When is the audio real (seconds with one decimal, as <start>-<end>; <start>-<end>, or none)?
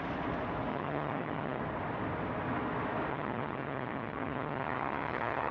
0.0-0.7; 1.6-3.1